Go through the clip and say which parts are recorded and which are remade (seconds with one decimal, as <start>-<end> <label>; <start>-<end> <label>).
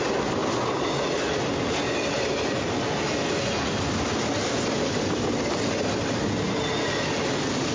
0.0-7.7 recorded